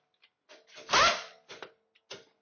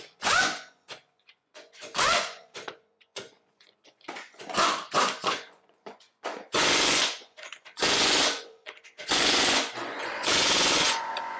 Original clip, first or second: first